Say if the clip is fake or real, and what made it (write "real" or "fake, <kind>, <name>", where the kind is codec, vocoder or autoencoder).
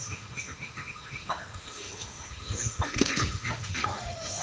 fake, autoencoder, DAC-VAE